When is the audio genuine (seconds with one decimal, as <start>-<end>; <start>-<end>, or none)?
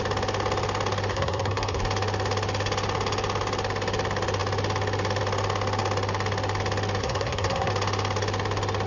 0.0-1.1; 1.8-7.0; 7.7-8.9